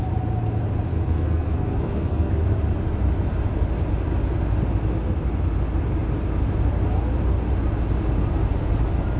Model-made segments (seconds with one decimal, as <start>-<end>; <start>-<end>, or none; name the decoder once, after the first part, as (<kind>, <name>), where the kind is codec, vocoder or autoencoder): 0.9-2.3 (codec, SNAC)